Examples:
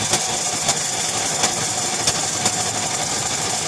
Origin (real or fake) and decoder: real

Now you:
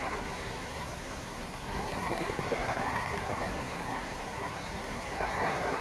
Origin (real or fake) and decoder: fake, codec, SNAC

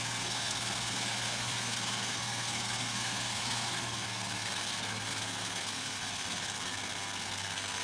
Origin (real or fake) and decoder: fake, codec, SNAC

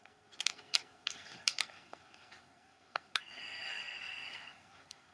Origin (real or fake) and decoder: fake, codec, SNAC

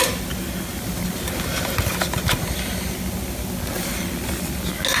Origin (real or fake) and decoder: real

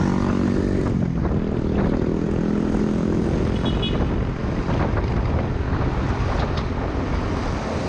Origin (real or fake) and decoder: real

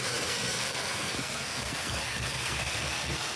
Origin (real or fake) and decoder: fake, codec, SNAC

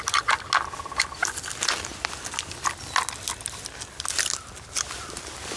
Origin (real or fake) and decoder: real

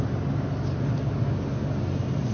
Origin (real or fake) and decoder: real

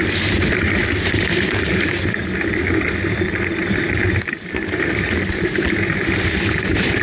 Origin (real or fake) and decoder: real